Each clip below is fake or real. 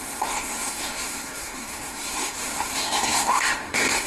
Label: fake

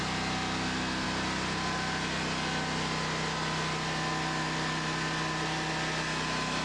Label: real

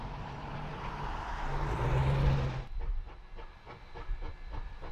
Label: real